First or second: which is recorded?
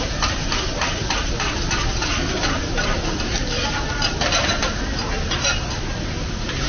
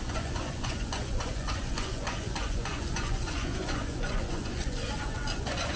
first